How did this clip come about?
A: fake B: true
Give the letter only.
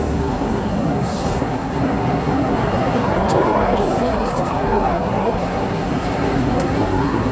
A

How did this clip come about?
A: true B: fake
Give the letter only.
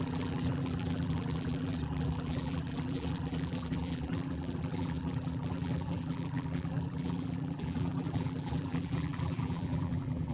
B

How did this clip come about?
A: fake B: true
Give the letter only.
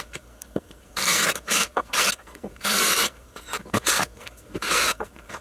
A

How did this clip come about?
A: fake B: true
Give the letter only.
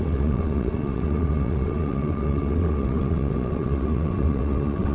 A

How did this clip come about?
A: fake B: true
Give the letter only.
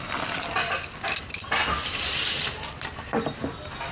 B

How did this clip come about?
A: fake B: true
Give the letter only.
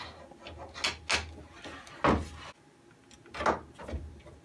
B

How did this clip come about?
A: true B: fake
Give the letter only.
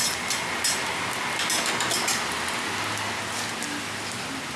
A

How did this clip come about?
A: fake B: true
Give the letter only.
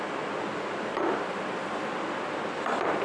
B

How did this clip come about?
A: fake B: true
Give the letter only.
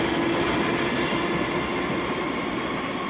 B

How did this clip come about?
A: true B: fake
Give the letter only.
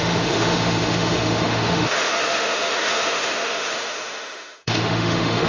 B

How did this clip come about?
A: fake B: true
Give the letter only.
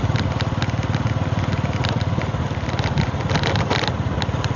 B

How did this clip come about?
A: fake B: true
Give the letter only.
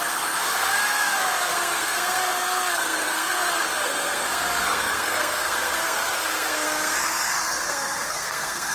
A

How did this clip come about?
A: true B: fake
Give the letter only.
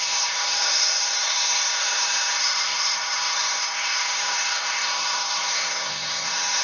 B